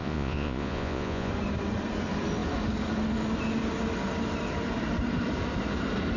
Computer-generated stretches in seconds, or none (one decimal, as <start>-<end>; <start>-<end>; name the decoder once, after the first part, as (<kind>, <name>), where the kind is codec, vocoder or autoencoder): 0.0-1.3 (vocoder, Vocos)

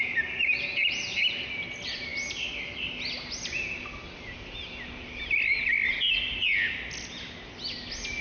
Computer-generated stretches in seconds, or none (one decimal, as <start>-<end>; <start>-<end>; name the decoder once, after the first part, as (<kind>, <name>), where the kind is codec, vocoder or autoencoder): none